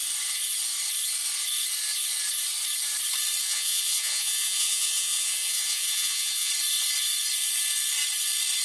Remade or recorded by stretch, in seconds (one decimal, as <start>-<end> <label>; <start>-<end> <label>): 0.0-3.4 recorded; 3.4-6.5 remade; 6.5-8.6 recorded